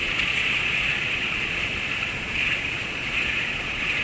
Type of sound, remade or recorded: remade